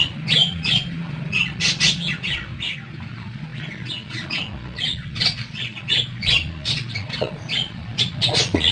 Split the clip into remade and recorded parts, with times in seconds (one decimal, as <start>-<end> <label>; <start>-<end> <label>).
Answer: 0.0-2.5 remade; 2.5-3.1 recorded; 3.1-8.7 remade